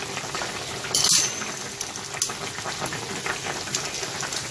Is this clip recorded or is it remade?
recorded